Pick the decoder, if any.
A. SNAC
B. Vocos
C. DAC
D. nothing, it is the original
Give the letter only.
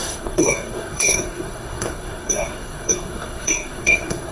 A